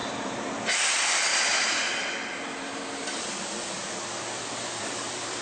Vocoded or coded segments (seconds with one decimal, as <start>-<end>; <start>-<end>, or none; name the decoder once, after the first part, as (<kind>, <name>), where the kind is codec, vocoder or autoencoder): 0.0-5.4 (vocoder, BigVGAN v2)